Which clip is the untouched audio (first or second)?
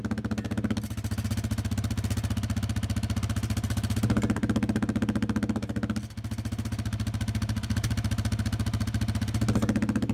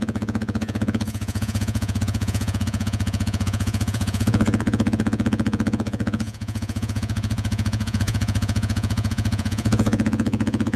first